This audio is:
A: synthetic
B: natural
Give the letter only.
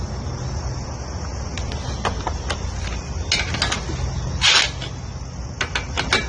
B